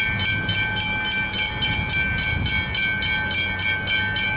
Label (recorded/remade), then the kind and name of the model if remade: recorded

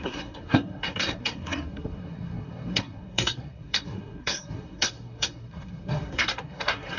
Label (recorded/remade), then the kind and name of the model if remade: remade, codec, SNAC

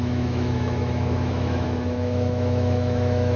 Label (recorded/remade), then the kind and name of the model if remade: remade, autoencoder, DAC-VAE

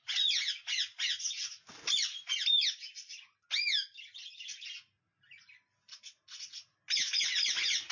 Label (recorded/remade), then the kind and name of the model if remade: recorded